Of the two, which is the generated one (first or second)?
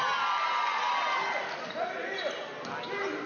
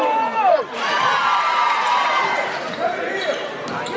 second